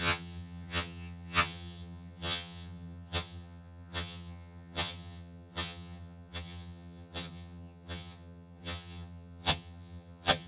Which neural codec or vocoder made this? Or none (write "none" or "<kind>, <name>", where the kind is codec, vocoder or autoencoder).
vocoder, HiFi-GAN